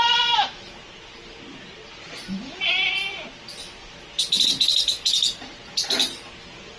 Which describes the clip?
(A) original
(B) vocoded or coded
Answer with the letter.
A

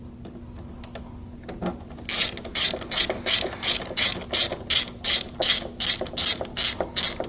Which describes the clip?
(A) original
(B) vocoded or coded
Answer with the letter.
A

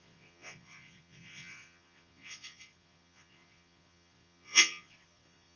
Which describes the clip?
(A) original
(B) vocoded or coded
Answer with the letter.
B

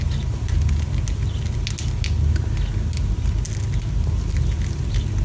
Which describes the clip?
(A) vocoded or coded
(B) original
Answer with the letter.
B